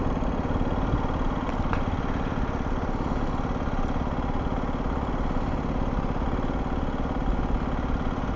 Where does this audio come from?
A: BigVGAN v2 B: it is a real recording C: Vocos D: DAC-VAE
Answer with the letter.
B